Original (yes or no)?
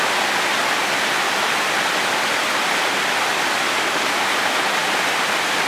yes